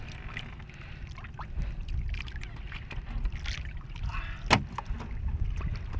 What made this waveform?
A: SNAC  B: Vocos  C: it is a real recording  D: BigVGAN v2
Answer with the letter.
C